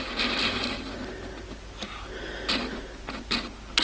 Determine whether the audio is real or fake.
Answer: real